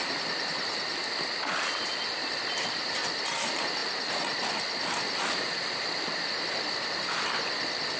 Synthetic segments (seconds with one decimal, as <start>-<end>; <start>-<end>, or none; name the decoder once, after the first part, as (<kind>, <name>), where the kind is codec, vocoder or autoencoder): none